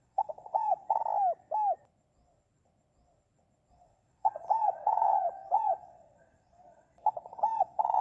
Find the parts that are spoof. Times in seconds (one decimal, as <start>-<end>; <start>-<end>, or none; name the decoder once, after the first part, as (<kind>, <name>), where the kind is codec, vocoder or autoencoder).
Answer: 0.0-1.0 (vocoder, WaveNeXt); 3.7-8.0